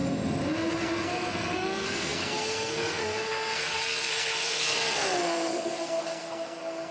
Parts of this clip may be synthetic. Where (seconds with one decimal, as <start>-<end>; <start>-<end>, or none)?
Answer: 0.7-6.9